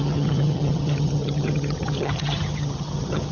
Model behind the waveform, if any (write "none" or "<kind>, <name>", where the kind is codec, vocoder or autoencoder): vocoder, HiFi-GAN